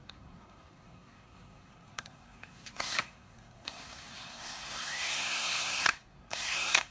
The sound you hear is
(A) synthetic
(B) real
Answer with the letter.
A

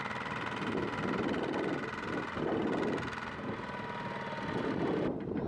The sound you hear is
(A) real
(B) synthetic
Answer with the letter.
A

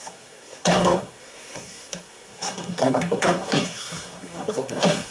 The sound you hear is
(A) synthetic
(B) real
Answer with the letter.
A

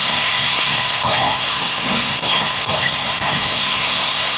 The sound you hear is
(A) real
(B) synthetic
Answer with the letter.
B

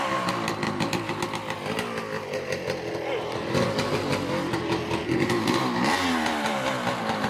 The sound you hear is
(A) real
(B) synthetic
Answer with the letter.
A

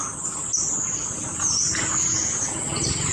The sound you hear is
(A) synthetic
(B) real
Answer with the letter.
B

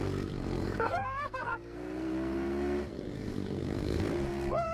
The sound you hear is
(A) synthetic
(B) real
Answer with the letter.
A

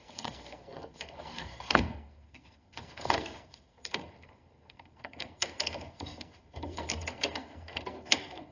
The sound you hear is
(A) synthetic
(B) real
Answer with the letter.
A